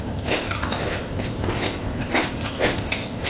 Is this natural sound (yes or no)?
no